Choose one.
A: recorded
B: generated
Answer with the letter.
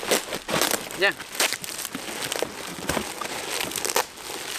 A